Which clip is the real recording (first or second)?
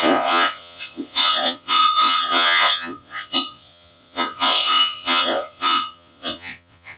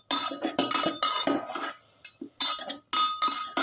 second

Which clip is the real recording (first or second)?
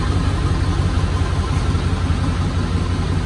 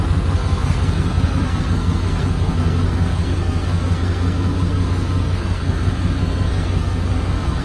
first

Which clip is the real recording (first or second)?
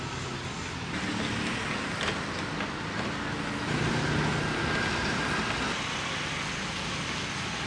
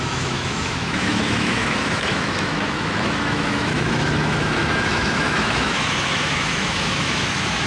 first